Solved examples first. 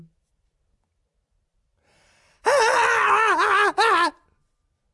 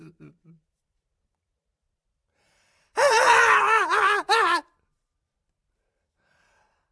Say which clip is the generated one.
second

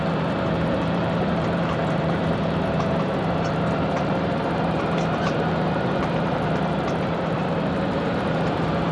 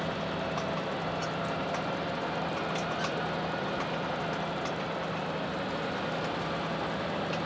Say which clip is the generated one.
first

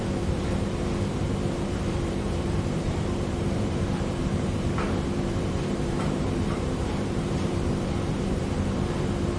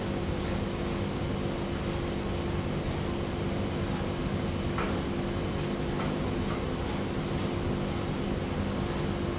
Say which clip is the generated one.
first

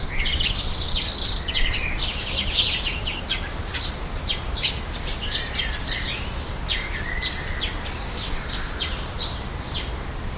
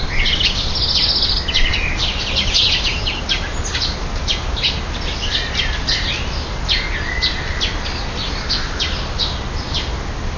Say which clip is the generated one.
first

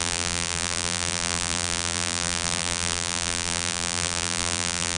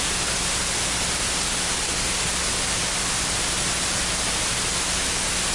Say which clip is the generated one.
first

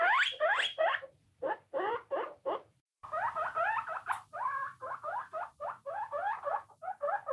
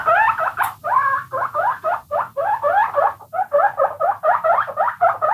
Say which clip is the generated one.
first